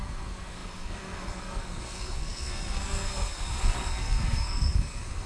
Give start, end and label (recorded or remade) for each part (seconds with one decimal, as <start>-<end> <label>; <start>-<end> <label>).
0.0-5.3 remade